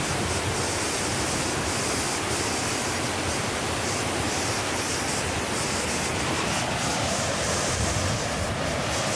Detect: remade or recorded remade